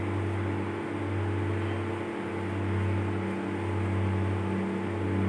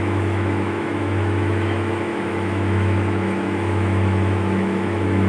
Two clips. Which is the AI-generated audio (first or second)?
second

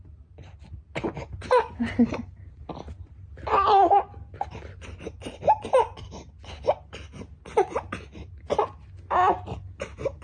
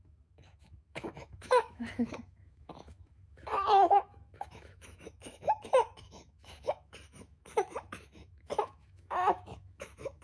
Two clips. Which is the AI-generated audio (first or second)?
second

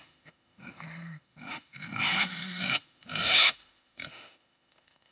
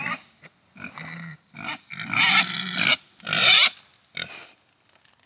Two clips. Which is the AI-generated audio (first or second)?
first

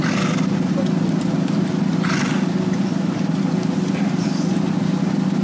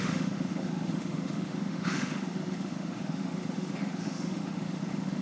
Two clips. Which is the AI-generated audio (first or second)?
second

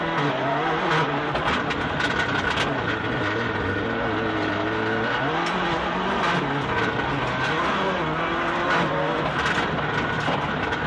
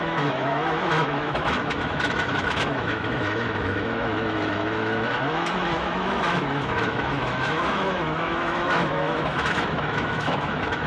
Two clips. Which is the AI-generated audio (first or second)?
second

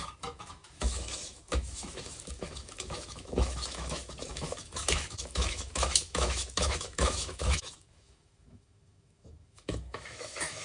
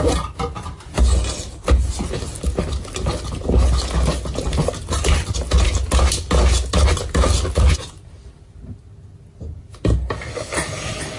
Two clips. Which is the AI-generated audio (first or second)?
first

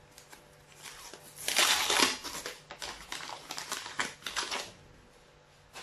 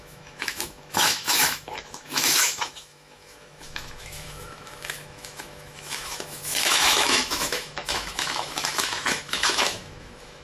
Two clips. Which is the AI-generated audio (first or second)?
second